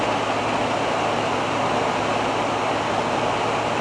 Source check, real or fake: real